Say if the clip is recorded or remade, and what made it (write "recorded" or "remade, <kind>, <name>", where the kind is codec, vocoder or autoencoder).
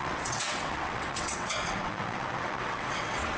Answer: remade, vocoder, WaveNeXt